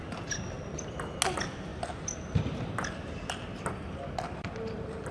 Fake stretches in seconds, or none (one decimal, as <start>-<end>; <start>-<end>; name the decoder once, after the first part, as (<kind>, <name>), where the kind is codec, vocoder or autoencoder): none